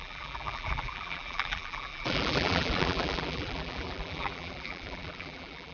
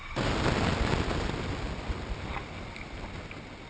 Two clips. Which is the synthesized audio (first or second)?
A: first